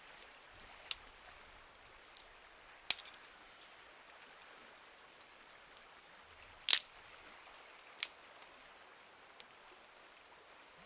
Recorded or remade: recorded